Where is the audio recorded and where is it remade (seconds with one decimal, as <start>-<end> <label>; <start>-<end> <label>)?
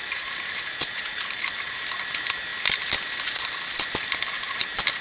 0.0-1.5 remade; 1.5-5.0 recorded